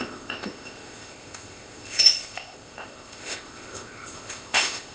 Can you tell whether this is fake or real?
fake